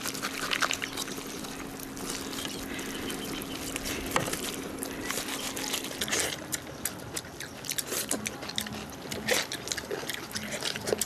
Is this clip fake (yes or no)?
no